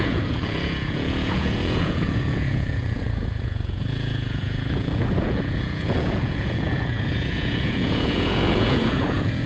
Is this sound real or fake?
fake